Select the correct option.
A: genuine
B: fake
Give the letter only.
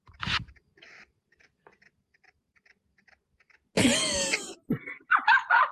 A